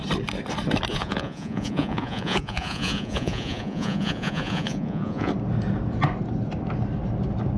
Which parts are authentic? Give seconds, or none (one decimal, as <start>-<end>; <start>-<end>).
0.0-0.9; 5.3-7.6